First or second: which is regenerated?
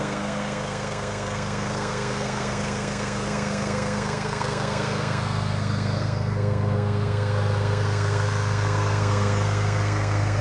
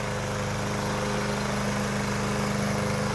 first